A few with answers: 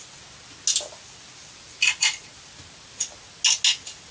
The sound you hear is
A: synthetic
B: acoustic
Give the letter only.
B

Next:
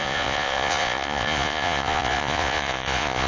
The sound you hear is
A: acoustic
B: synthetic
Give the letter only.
B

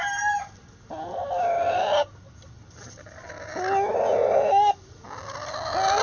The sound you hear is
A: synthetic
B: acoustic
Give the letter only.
B